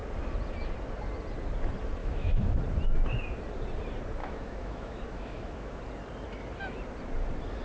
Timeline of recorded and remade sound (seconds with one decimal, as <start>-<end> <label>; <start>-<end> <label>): 0.0-2.0 recorded; 2.0-2.6 remade; 2.6-4.2 recorded; 4.2-5.8 remade; 5.8-7.6 recorded